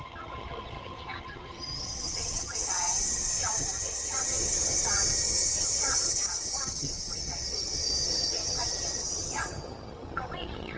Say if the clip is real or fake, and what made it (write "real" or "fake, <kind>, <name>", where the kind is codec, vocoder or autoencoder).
fake, vocoder, HiFi-GAN